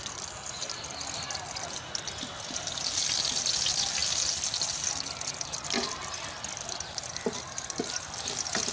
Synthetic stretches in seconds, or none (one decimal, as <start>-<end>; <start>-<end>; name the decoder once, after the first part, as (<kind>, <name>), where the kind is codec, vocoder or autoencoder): none